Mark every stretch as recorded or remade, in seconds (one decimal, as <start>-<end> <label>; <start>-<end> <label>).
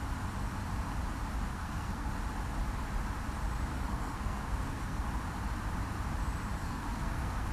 0.0-1.5 recorded; 1.5-2.1 remade; 2.1-3.7 recorded; 3.7-5.1 remade; 5.1-6.6 recorded; 6.6-7.5 remade